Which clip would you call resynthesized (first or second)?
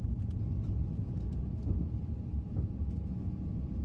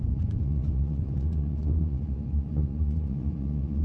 second